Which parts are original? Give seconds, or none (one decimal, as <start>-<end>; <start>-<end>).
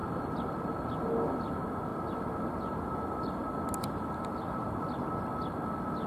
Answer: 0.0-6.1